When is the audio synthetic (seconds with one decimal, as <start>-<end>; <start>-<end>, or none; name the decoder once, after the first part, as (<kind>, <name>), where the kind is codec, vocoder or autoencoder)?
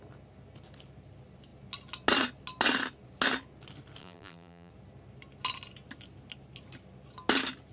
4.0-4.7 (vocoder, BigVGAN v2)